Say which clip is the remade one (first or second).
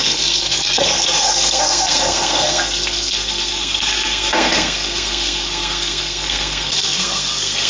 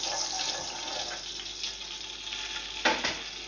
first